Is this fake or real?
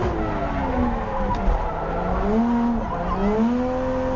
real